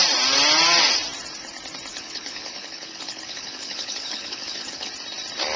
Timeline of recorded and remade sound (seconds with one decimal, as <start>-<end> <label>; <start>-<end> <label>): 0.0-1.9 recorded; 1.9-4.9 remade; 4.9-5.6 recorded